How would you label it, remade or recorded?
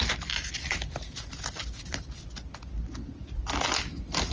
recorded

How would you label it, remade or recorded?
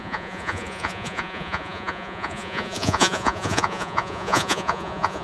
remade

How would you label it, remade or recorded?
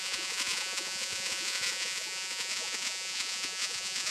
remade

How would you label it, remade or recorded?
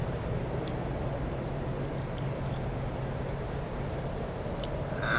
remade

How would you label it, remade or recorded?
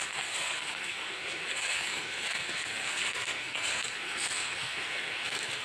remade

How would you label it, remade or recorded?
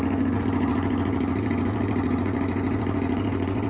remade